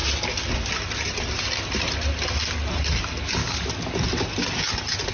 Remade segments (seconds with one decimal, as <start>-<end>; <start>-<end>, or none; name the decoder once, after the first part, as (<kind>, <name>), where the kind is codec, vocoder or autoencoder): 3.4-3.9 (codec, DAC)